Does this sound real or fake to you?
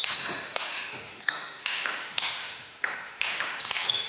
fake